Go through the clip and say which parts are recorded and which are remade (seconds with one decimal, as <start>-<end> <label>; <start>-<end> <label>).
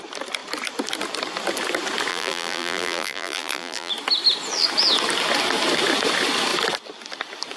0.0-2.1 recorded; 2.1-3.9 remade; 3.9-7.6 recorded